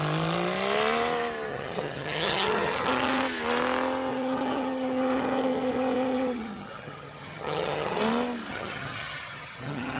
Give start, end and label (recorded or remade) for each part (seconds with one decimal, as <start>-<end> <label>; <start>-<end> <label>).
0.0-1.5 recorded; 1.5-3.2 remade; 3.2-4.1 recorded; 4.1-8.0 remade; 8.0-8.5 recorded; 8.5-10.0 remade